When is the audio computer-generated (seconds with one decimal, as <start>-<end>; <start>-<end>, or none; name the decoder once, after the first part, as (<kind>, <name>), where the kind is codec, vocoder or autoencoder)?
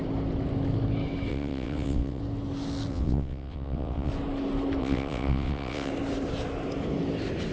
1.3-2.2 (vocoder, WaveNeXt); 2.9-4.1; 4.8-5.9